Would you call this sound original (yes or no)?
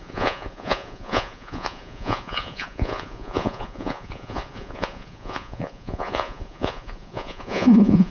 no